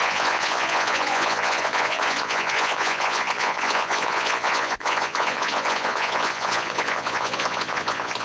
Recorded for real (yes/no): no